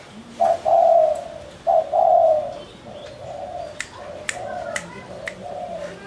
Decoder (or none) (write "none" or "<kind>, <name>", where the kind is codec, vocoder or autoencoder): none